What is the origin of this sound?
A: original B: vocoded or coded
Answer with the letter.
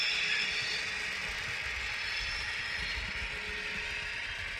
A